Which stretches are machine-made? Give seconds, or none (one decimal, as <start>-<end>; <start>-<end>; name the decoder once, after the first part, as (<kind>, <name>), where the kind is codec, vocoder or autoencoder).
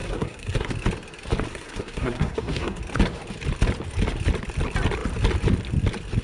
0.0-0.7 (codec, SNAC); 1.5-2.8